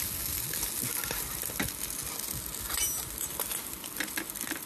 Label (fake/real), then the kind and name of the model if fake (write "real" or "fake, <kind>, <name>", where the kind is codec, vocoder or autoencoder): real